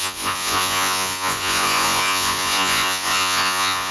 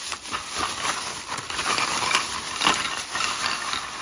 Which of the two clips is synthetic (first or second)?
first